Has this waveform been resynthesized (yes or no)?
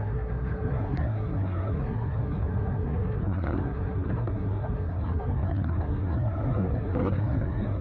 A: yes